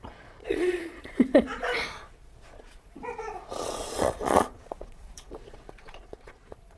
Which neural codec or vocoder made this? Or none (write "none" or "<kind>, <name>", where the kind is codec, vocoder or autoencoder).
vocoder, Vocos